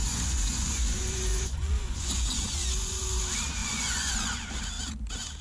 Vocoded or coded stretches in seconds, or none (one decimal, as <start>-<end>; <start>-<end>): 0.0-3.2; 3.6-4.6